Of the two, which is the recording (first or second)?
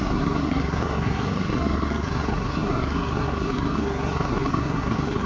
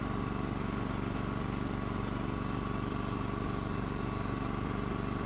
second